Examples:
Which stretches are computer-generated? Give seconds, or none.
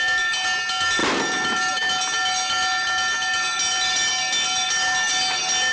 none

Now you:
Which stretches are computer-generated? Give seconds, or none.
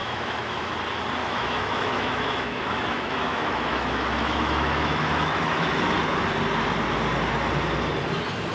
0.0-0.7 (autoencoder, DAC-VAE); 1.2-5.8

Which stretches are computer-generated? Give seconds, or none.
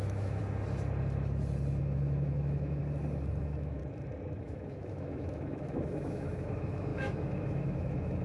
0.0-0.4 (autoencoder, DAC-VAE); 1.8-2.8; 3.4-3.8; 4.4-8.2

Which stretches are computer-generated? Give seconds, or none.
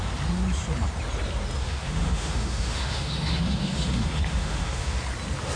1.6-5.0 (autoencoder, DAC-VAE)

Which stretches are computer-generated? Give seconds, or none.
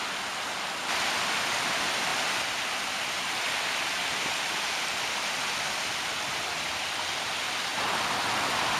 none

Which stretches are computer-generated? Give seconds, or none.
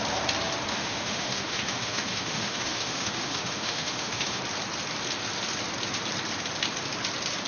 0.7-4.4 (autoencoder, DAC-VAE)